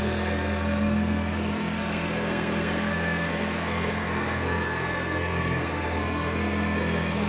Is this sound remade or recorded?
remade